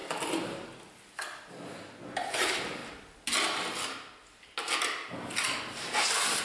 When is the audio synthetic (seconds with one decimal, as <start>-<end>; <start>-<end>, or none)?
2.2-2.8